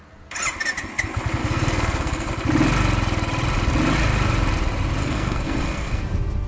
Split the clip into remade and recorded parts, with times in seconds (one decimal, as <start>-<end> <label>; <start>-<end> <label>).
0.0-1.4 recorded; 1.4-2.3 remade; 2.3-5.0 recorded; 5.0-6.0 remade; 6.0-6.5 recorded